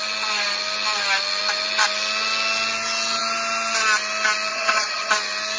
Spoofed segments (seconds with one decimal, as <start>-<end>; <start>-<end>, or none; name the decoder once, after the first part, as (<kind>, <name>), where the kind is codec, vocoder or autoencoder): 4.5-5.1 (vocoder, HiFi-GAN)